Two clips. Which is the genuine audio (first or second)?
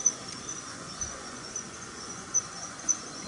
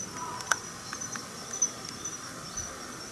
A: second